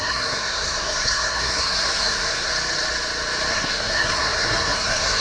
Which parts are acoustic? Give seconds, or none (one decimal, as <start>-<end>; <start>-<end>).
2.5-3.5